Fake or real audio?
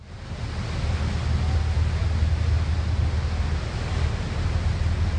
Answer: real